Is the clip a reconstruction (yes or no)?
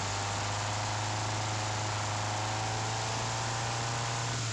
no